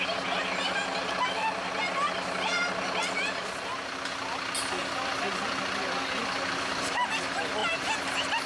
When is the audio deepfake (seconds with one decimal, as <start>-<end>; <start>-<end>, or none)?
none